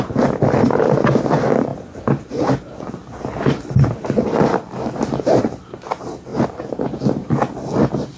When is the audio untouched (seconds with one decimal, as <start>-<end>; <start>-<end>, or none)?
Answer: 0.0-8.2